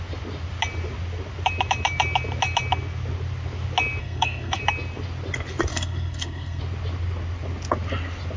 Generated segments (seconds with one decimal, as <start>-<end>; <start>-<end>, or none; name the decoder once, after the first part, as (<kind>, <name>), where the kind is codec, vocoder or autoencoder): 4.0-4.6 (codec, SNAC); 5.7-6.6